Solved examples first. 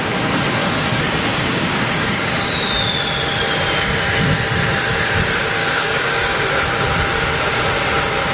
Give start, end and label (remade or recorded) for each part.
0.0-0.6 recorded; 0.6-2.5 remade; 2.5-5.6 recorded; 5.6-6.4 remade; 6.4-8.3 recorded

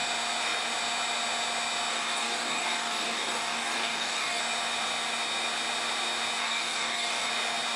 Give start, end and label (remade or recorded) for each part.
0.0-1.9 recorded; 1.9-4.4 remade; 4.4-6.4 recorded; 6.4-7.3 remade; 7.3-7.8 recorded

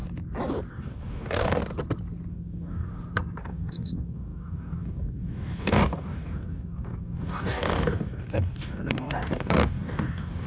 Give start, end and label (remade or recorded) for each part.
0.0-0.7 recorded; 0.7-1.6 remade; 1.6-2.3 recorded; 2.3-2.9 remade; 2.9-3.4 recorded; 3.4-10.5 remade

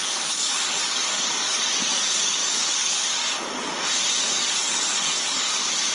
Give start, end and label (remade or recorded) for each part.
0.0-3.5 remade; 3.5-4.2 recorded; 4.2-5.9 remade

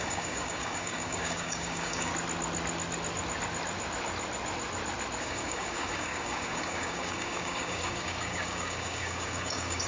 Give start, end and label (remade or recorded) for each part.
0.0-2.1 remade; 2.1-5.2 recorded; 5.2-9.9 remade